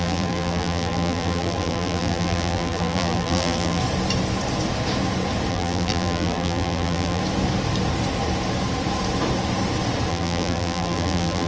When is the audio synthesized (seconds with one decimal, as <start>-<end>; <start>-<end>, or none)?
0.0-3.8; 5.5-7.2; 10.1-11.5